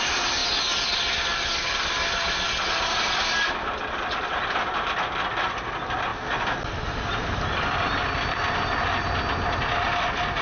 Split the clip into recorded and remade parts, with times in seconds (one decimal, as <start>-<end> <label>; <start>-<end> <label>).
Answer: 0.0-10.4 recorded